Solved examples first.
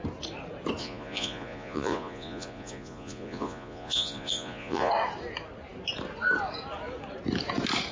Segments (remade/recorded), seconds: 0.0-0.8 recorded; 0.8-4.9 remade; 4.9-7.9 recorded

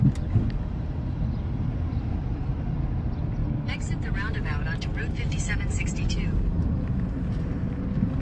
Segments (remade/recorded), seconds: 0.0-8.2 recorded